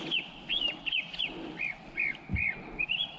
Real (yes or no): yes